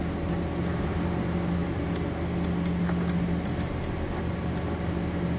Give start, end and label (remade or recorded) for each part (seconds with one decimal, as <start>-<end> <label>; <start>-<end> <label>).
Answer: 0.0-5.4 recorded